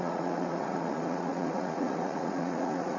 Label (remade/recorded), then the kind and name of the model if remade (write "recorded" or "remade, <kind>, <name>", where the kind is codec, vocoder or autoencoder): remade, vocoder, Vocos